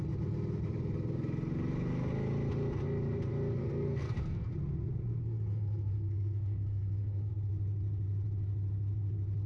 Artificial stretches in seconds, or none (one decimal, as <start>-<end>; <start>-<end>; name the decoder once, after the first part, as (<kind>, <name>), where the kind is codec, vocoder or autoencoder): 3.6-4.5 (codec, SNAC); 5.2-7.3

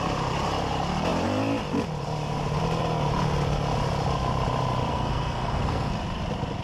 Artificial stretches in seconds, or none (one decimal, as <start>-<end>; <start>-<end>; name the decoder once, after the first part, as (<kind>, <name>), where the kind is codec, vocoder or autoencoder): 4.9-5.9 (codec, SNAC)